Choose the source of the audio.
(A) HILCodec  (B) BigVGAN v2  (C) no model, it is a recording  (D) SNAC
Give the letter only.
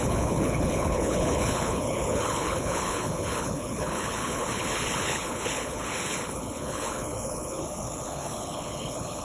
A